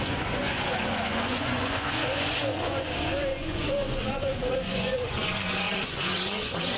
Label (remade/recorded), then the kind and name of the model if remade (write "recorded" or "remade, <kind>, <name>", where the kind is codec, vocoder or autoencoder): remade, vocoder, Vocos